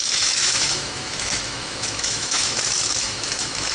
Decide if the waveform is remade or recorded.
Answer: remade